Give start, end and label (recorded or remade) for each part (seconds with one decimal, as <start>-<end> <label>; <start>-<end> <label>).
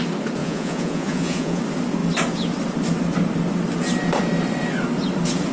0.0-0.4 recorded; 0.4-1.6 remade; 1.6-5.5 recorded